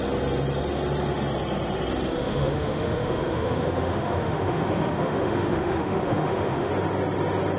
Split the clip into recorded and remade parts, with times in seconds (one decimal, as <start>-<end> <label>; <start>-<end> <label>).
0.0-2.1 recorded; 2.1-6.7 remade; 6.7-7.6 recorded